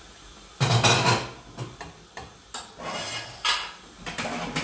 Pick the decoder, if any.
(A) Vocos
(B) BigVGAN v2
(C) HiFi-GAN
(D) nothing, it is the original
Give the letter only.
D